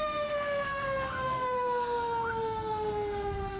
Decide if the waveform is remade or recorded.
remade